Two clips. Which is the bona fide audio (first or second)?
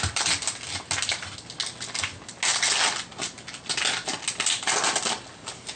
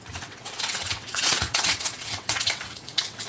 first